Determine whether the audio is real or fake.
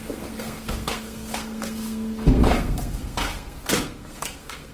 fake